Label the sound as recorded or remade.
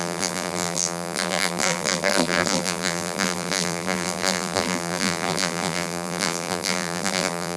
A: remade